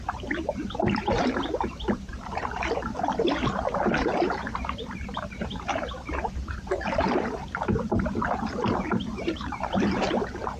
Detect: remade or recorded remade